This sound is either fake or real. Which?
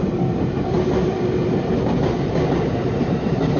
fake